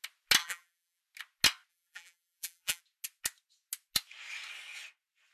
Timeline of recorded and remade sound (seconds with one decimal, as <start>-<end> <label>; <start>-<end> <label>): 0.0-0.4 recorded; 0.4-1.0 remade; 1.0-1.7 recorded; 1.7-2.8 remade; 2.8-5.3 recorded